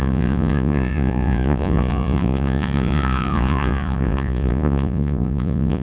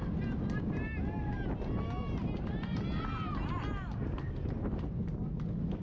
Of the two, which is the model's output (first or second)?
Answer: first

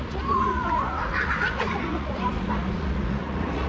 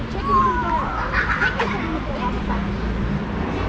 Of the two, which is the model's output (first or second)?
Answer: first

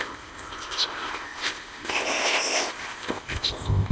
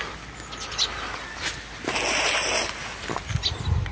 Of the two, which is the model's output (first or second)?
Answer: first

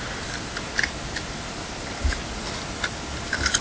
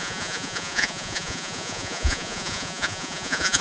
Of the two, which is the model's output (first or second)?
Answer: second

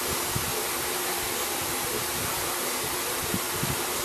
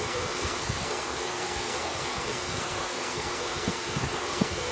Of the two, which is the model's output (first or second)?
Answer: second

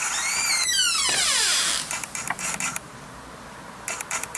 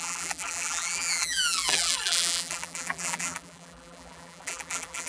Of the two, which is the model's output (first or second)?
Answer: second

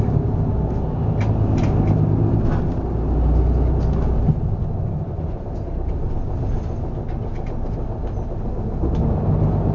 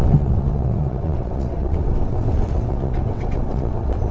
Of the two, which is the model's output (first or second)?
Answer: second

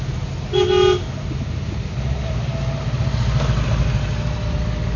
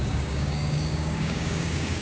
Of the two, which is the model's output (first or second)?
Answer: second